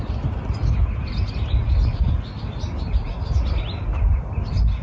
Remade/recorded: recorded